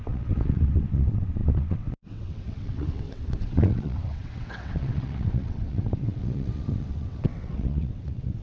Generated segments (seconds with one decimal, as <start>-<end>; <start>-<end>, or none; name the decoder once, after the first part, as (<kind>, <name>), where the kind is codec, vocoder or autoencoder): 0.0-8.4 (vocoder, WaveNeXt)